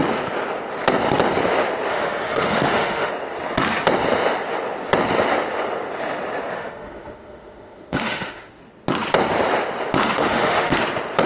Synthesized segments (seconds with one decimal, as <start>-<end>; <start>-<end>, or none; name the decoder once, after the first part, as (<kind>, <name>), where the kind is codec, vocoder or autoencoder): 1.9-3.1 (autoencoder, DAC-VAE); 6.5-8.6; 10.0-10.8